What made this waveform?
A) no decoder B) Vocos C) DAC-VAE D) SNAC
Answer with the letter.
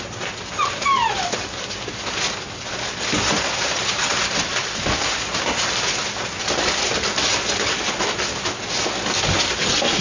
A